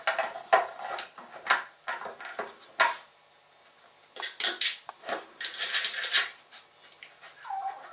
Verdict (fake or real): real